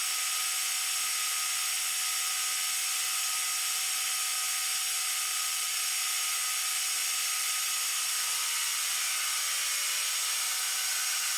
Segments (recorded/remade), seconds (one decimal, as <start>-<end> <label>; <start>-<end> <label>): 0.0-11.4 recorded